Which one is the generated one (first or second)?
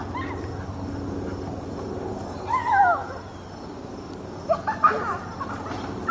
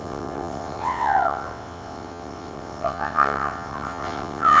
second